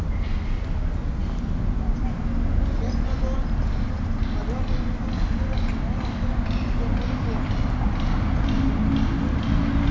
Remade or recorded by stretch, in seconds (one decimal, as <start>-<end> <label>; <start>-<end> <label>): 0.0-9.9 recorded